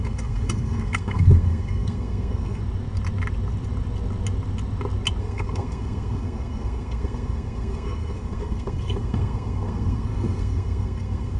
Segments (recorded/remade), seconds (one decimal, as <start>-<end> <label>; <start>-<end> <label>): 0.0-2.6 remade; 2.6-5.2 recorded; 5.2-11.4 remade